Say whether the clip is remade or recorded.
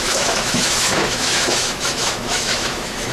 remade